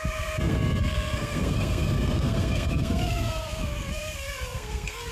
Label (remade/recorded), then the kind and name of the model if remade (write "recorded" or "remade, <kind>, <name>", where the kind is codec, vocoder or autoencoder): remade, codec, SNAC